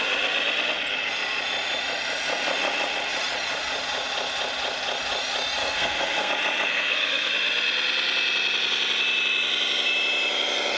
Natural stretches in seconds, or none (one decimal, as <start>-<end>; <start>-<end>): 0.0-5.6; 6.3-6.7; 7.3-10.8